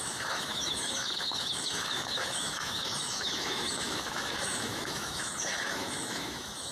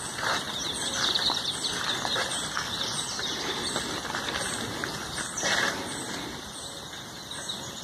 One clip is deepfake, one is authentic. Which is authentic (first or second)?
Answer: second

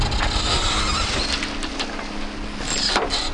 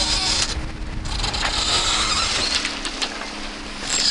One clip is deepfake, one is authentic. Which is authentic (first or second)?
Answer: first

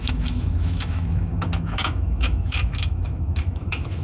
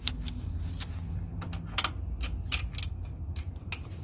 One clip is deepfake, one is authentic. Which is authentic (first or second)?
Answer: second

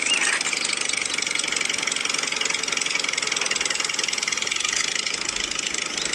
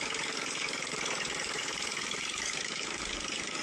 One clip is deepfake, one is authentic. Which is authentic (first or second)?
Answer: first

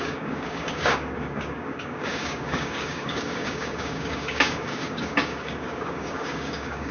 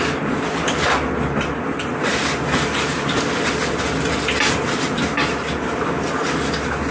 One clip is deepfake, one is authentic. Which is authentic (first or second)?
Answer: second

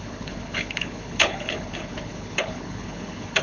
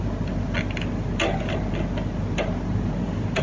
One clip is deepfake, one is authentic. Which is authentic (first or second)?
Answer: second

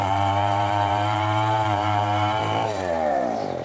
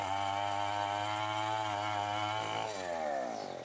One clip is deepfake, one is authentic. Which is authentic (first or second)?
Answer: second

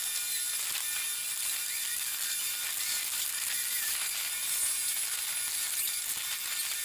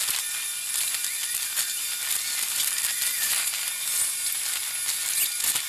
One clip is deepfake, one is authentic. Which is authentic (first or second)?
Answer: first